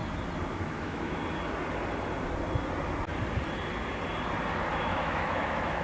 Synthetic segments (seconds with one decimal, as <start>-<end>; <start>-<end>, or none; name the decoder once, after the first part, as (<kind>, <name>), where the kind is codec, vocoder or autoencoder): 0.5-1.2 (autoencoder, DAC-VAE); 4.7-5.8